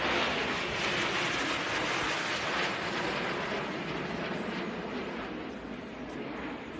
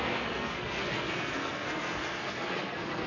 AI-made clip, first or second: second